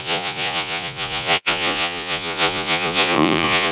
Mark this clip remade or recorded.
remade